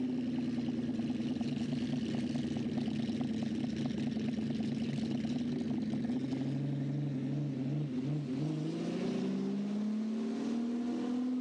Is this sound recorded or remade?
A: recorded